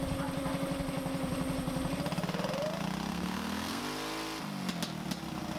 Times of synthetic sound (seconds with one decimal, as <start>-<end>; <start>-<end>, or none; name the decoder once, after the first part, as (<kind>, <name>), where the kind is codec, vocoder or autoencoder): 3.1-3.8 (codec, SNAC)